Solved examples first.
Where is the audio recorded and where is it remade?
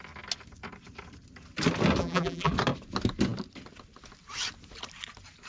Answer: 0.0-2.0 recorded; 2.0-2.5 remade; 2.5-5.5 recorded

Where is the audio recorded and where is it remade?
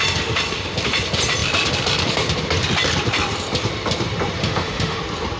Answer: 0.0-4.4 recorded; 4.4-5.0 remade; 5.0-5.4 recorded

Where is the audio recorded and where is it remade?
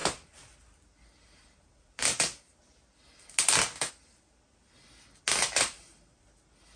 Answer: 0.0-6.8 recorded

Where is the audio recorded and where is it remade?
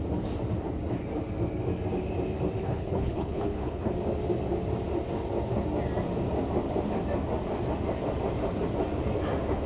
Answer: 0.0-2.6 recorded; 2.6-3.9 remade; 3.9-9.7 recorded